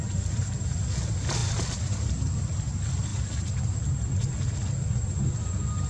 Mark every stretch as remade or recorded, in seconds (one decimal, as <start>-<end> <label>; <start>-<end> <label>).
0.0-5.9 recorded